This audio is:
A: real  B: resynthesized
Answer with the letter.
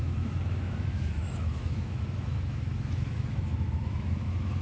B